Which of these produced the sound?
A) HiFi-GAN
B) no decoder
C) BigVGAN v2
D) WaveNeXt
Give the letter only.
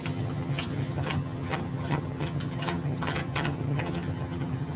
A